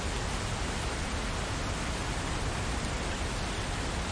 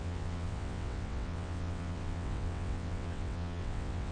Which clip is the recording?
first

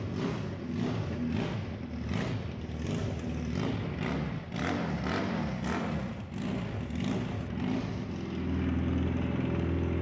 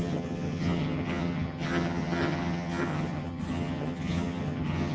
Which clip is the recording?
first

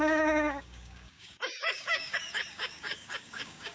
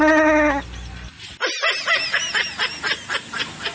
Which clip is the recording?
second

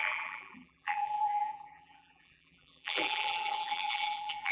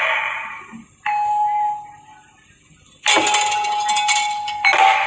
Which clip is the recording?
second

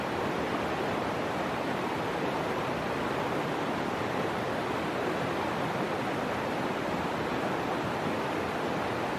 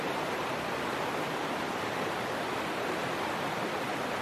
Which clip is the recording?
first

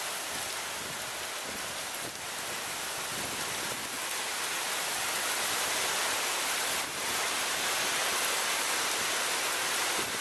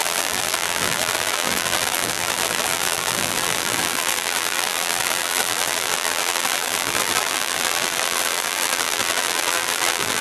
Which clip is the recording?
first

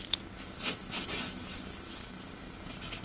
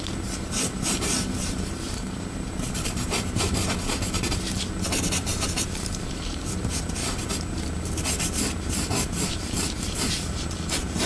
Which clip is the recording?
first